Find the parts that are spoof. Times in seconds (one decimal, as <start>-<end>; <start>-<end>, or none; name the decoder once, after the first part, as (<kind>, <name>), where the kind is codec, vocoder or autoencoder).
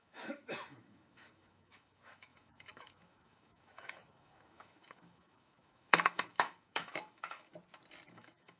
0.0-7.5 (autoencoder, DAC-VAE); 8.1-8.6